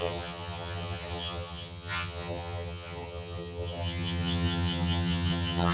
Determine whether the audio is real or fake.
fake